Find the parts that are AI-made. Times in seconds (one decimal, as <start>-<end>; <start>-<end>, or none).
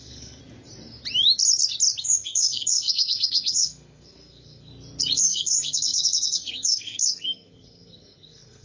0.0-0.4; 2.0-4.7; 5.2-8.6